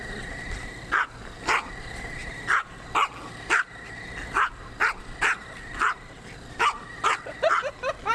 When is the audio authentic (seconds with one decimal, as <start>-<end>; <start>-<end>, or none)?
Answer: 0.0-8.1